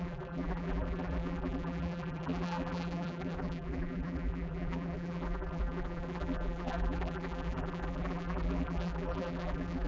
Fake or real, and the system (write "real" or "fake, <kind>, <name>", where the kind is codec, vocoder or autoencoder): fake, vocoder, BigVGAN v2